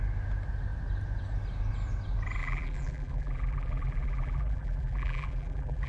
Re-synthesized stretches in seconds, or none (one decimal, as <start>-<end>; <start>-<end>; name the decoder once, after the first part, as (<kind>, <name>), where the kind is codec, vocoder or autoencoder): 2.4-5.9 (vocoder, BigVGAN v2)